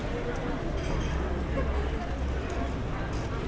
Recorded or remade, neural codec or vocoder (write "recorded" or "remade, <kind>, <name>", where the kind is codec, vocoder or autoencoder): recorded